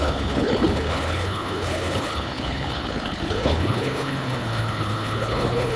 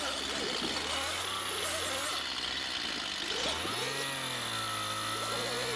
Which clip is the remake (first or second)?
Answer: first